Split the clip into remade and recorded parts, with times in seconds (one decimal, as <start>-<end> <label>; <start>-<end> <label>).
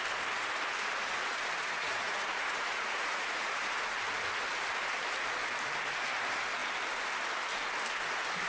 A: 0.0-1.6 recorded; 1.6-3.6 remade; 3.6-8.5 recorded